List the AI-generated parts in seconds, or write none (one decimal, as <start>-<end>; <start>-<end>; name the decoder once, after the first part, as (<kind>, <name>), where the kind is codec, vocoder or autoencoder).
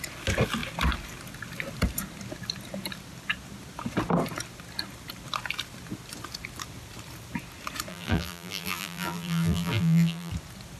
7.9-10.3 (vocoder, BigVGAN v2)